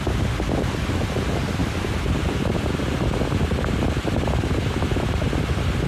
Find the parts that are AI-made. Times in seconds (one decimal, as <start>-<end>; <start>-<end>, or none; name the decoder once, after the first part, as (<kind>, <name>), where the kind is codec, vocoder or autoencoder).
none